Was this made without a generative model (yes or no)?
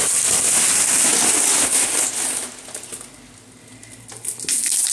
yes